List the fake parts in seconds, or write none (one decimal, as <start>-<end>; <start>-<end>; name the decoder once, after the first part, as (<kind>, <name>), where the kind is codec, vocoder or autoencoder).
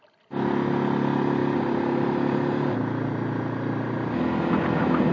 none